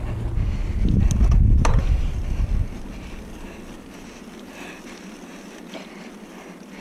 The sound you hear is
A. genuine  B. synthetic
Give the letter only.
A